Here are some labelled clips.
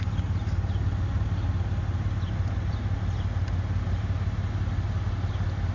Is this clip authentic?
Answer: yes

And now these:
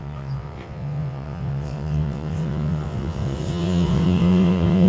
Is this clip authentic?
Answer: no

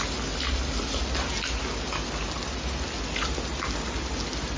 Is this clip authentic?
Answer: yes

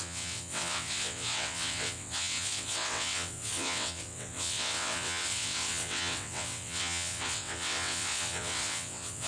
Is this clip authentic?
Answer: no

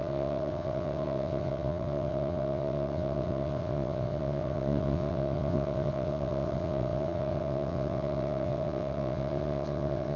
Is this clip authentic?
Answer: no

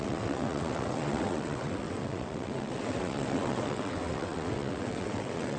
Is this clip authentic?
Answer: no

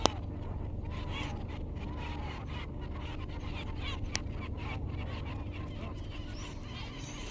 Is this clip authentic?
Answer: yes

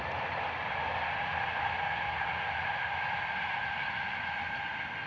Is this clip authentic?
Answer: yes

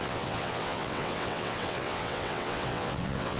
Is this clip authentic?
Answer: no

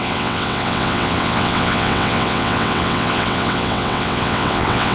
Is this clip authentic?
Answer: no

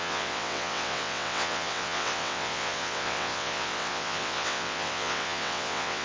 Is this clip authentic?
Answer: no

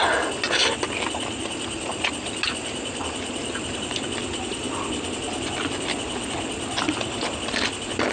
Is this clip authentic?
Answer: yes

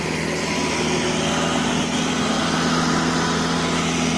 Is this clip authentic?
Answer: yes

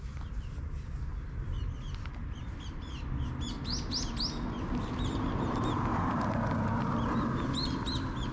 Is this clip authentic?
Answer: yes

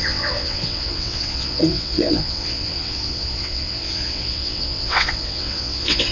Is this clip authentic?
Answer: no